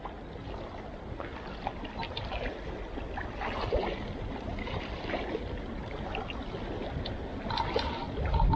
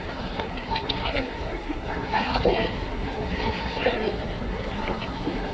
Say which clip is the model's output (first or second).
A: second